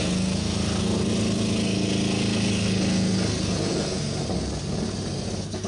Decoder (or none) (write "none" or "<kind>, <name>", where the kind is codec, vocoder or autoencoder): none